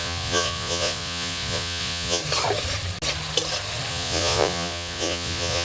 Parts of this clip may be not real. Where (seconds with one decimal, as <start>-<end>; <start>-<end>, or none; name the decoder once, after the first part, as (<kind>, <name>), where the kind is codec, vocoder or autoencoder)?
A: 0.0-2.2 (vocoder, Vocos); 3.9-5.6